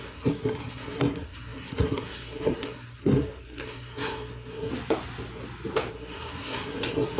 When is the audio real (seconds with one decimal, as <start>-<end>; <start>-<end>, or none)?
4.7-5.9